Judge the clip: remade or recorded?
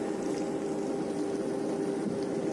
recorded